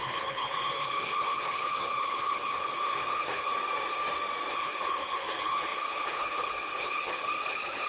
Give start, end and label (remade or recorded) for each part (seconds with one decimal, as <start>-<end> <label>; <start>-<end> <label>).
0.0-3.5 remade; 3.5-4.5 recorded; 4.5-7.9 remade